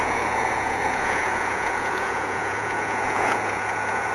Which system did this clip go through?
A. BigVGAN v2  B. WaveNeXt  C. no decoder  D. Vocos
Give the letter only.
D